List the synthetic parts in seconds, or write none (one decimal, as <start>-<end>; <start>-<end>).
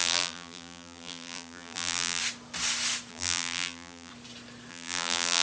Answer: 0.0-2.2; 3.1-4.1; 4.7-5.4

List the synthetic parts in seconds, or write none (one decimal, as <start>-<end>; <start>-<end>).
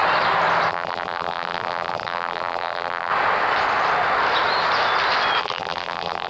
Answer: 0.7-3.1; 5.4-6.3